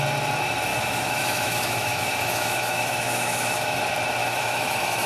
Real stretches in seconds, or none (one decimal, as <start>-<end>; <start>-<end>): 0.0-0.7; 3.8-4.2